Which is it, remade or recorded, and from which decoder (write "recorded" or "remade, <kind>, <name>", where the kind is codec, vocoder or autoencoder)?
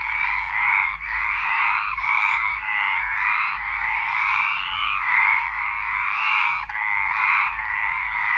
remade, codec, DAC